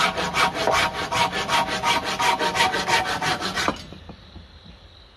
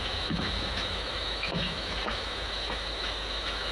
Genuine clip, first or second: first